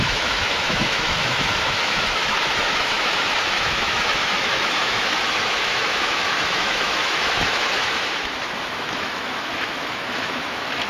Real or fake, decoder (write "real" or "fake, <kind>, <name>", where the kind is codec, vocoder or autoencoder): fake, autoencoder, DAC-VAE